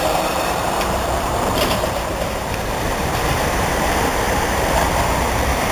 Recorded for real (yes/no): no